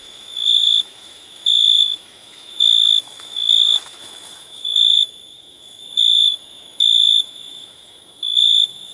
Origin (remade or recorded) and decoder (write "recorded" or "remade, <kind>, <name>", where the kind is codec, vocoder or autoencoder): remade, autoencoder, DAC-VAE